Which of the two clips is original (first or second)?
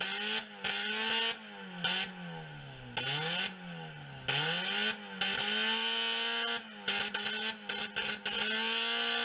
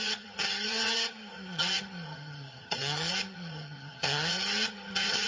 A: first